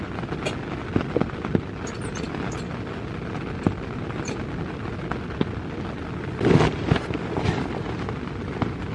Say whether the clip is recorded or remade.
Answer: recorded